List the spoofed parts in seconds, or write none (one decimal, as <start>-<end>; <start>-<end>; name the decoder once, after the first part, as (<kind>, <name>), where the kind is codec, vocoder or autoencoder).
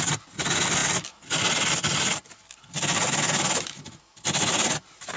none